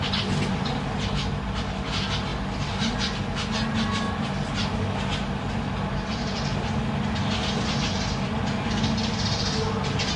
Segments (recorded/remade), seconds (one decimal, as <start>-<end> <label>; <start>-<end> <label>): 0.0-10.2 recorded